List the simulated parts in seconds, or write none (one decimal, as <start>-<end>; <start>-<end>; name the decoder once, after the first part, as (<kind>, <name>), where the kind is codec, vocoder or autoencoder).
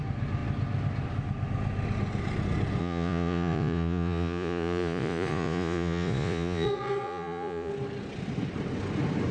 2.8-7.7 (vocoder, Vocos)